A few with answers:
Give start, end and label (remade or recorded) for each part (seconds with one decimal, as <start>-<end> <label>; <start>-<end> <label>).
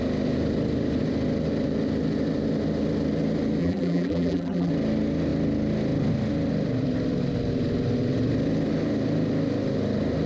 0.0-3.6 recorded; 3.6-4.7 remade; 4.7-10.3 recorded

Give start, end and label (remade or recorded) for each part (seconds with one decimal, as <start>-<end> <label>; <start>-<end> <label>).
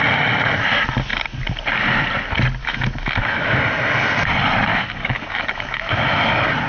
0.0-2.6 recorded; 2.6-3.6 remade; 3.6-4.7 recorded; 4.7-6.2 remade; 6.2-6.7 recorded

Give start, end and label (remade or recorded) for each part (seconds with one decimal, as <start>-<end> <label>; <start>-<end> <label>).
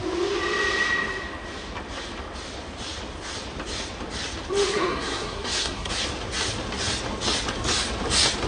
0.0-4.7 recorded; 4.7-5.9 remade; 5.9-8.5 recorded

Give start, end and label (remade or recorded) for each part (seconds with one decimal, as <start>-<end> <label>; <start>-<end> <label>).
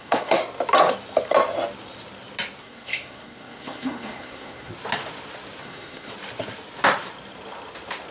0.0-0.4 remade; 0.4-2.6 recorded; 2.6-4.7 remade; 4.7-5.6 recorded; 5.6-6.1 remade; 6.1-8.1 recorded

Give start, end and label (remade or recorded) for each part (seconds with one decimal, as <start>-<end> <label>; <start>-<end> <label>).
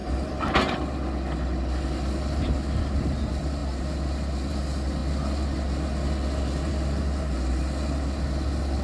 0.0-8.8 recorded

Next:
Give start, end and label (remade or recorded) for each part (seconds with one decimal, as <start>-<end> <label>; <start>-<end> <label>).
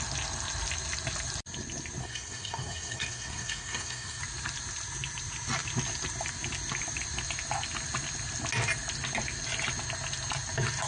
0.0-2.0 recorded; 2.0-4.2 remade; 4.2-10.9 recorded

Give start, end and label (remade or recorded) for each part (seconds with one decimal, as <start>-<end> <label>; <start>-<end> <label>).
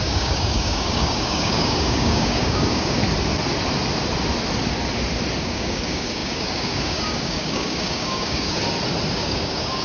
0.0-3.0 remade; 3.0-5.4 recorded; 5.4-8.6 remade; 8.6-9.1 recorded; 9.1-9.8 remade